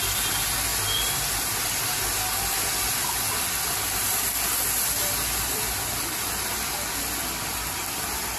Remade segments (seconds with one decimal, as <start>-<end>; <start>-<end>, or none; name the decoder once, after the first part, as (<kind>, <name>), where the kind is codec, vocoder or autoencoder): none